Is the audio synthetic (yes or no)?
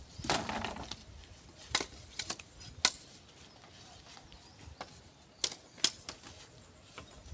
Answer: no